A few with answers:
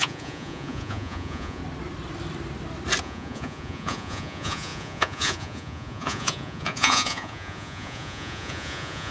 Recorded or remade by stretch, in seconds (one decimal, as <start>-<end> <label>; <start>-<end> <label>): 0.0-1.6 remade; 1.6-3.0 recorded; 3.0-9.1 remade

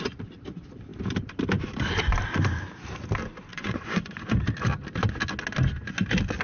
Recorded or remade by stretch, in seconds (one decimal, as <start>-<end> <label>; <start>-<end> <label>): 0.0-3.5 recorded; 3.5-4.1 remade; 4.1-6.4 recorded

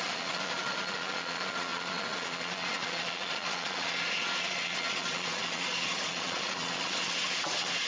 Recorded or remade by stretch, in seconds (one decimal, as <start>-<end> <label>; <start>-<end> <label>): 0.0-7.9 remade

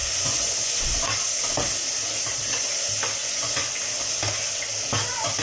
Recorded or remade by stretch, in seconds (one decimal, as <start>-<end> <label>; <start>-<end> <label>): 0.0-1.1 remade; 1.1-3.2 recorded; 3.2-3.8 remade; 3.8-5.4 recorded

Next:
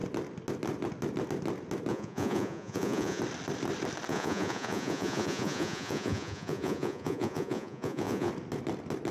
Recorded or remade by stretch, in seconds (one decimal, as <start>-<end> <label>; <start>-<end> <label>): 0.0-1.9 recorded; 1.9-3.2 remade; 3.2-4.1 recorded; 4.1-8.3 remade; 8.3-9.1 recorded

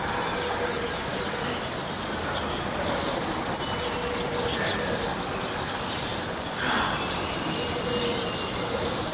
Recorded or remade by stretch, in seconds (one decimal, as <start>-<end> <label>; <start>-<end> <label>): 0.0-6.1 recorded; 6.1-6.6 remade; 6.6-9.1 recorded

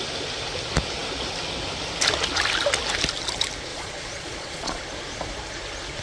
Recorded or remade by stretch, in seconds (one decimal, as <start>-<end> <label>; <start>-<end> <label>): 0.0-3.7 recorded; 3.7-4.8 remade; 4.8-6.0 recorded

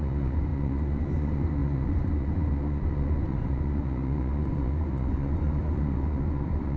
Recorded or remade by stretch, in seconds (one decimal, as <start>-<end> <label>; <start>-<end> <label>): 0.0-6.8 remade